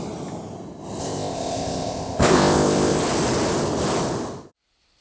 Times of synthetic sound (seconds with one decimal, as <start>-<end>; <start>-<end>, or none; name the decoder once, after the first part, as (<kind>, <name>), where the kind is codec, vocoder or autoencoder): 1.0-3.0 (codec, ZipCodec)

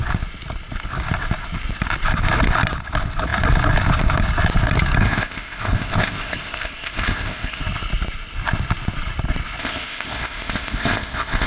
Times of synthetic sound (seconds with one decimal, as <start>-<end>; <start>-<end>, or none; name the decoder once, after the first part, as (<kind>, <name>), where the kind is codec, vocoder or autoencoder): 5.0-7.6 (codec, ZipCodec); 9.6-11.5

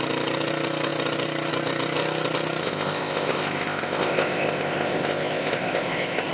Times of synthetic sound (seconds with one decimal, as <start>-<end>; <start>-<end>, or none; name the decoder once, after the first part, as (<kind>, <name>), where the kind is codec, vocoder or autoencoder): 2.6-6.3 (codec, ZipCodec)

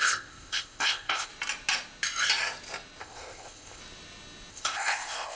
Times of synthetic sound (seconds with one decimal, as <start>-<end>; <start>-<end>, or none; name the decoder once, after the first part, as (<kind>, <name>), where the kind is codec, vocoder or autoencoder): 0.0-1.3 (codec, ZipCodec); 3.0-3.8; 4.5-5.4

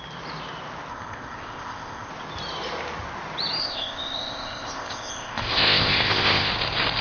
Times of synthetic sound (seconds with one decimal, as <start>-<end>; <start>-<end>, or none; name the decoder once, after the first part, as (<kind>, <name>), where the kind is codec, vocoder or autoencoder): 0.9-2.1 (codec, ZipCodec); 3.6-6.5